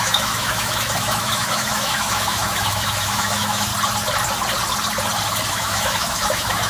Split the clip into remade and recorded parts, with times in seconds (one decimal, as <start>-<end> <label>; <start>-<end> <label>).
0.0-3.7 remade; 3.7-5.5 recorded; 5.5-6.7 remade